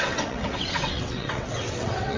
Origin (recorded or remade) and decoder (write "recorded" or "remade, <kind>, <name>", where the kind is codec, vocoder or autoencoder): remade, vocoder, WaveNeXt